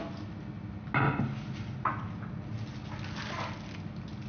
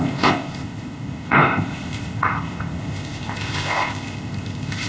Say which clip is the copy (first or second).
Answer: second